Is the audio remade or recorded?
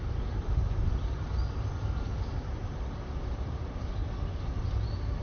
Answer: recorded